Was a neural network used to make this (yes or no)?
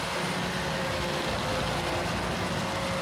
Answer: no